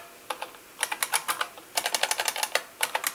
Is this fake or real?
real